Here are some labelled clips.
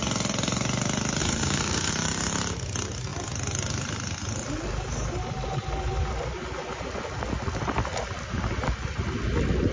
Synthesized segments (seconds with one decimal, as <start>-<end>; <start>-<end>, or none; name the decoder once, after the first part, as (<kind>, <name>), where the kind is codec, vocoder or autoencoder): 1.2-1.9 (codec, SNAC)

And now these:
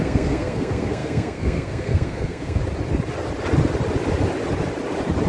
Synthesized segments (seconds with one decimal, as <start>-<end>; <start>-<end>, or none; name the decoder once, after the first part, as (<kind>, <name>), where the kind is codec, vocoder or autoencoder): 0.0-2.6 (codec, SNAC)

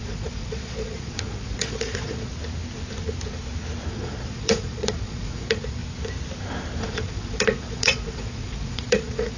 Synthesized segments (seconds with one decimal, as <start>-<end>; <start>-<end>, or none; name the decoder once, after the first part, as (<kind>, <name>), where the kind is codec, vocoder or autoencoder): 0.0-2.3 (vocoder, Vocos); 3.9-5.8; 6.8-9.4